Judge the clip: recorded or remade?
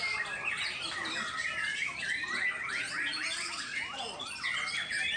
recorded